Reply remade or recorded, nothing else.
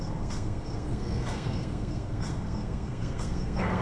remade